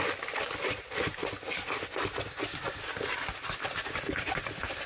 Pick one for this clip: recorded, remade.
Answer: recorded